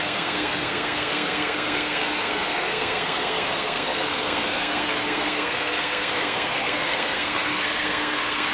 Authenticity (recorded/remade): remade